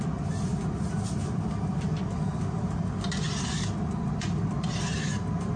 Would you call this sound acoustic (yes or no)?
yes